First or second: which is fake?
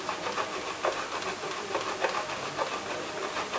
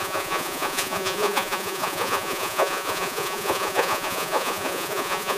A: second